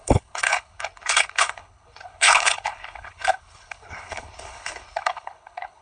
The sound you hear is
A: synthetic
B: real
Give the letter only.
A